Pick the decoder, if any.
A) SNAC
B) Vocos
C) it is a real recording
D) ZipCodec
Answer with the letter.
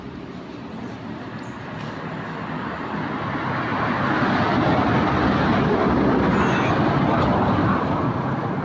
C